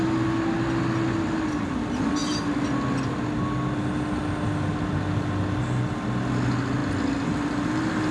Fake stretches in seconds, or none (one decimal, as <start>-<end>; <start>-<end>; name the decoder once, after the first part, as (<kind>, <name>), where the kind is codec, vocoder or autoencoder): none